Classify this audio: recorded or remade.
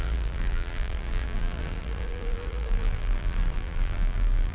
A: remade